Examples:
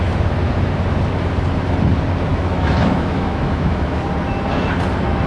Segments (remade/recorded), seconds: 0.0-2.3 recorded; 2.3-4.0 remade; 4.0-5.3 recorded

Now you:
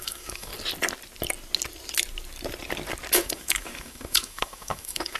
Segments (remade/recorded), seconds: 0.0-0.5 remade; 0.5-3.2 recorded; 3.2-5.2 remade

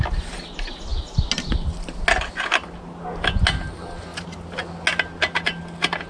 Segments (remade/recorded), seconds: 0.0-6.1 recorded

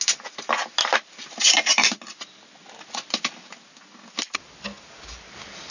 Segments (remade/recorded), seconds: 0.0-5.7 recorded

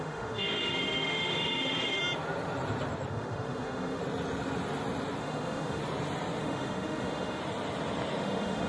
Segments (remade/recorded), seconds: 0.0-2.0 remade; 2.0-3.1 recorded; 3.1-4.0 remade; 4.0-5.2 recorded; 5.2-5.8 remade; 5.8-6.4 recorded; 6.4-7.4 remade; 7.4-8.2 recorded; 8.2-8.7 remade

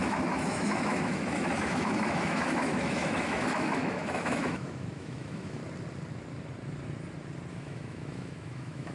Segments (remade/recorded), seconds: 0.0-5.6 remade; 5.6-7.5 recorded; 7.5-8.9 remade

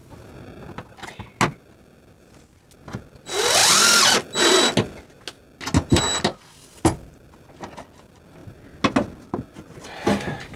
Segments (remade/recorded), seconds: 0.0-10.6 recorded